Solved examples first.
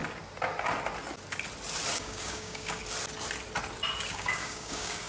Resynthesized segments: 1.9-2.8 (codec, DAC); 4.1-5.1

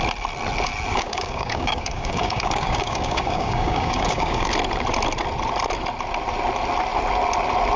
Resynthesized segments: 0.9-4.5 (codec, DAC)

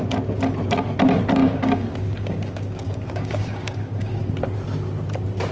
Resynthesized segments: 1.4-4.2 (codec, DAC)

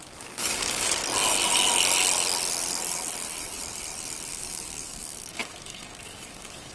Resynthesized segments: 0.0-1.0 (codec, DAC); 4.3-6.7

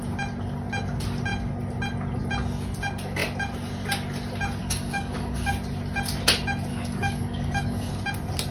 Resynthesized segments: 4.6-5.5 (codec, DAC); 6.7-7.9

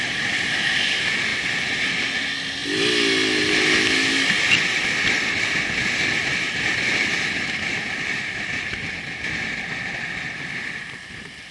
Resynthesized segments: none